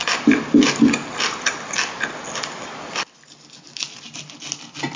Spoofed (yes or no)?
no